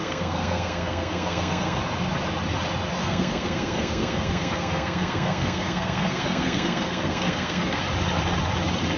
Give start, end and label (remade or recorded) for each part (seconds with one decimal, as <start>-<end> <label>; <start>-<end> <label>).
0.0-1.8 remade; 1.8-3.0 recorded; 3.0-7.8 remade; 7.8-9.0 recorded